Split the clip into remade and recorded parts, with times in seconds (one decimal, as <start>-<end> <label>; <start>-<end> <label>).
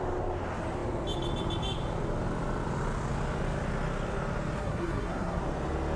0.0-4.6 recorded; 4.6-5.4 remade; 5.4-6.0 recorded